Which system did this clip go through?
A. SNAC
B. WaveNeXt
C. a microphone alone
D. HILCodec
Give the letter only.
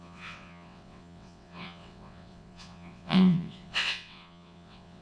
B